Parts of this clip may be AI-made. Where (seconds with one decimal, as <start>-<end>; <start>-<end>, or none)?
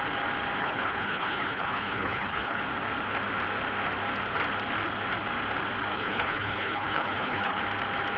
0.6-2.6; 5.9-7.6